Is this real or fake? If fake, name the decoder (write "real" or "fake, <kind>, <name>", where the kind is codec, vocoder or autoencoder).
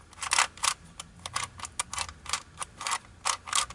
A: real